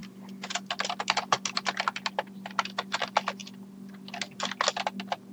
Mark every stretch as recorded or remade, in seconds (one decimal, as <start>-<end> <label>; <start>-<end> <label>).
0.0-5.3 recorded